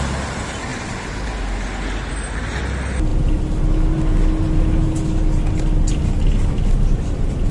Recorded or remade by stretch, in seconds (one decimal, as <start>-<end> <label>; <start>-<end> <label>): 0.0-7.5 recorded